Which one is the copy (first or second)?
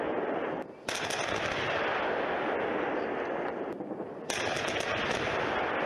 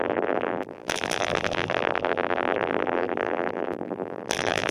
second